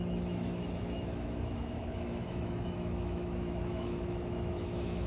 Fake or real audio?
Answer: fake